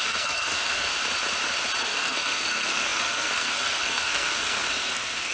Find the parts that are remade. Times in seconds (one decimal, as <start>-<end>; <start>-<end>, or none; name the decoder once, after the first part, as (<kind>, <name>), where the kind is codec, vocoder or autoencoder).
0.0-0.9 (codec, SNAC); 1.8-5.3